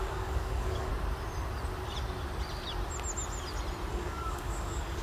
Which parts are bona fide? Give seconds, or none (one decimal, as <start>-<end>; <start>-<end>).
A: 0.9-3.9